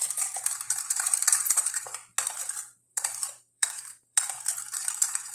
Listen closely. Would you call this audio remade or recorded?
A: remade